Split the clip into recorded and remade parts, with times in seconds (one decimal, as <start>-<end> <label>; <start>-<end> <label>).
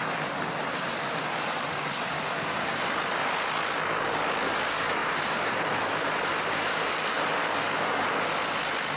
0.0-0.6 recorded; 0.6-2.7 remade; 2.7-5.0 recorded; 5.0-6.9 remade; 6.9-9.0 recorded